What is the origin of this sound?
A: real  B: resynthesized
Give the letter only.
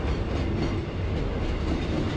A